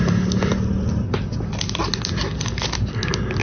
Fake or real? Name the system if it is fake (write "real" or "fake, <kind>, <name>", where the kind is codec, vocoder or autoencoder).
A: real